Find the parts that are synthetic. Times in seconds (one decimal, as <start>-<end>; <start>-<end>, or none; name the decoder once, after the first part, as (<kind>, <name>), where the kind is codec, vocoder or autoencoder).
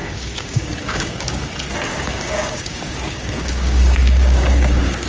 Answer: 0.0-1.5 (codec, DAC); 1.9-5.1